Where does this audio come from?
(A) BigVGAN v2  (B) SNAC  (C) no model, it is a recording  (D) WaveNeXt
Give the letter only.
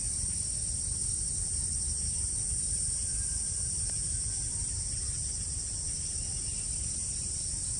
C